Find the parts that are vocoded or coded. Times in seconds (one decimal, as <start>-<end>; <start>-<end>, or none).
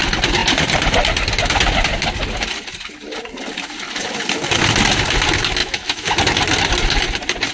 5.6-6.2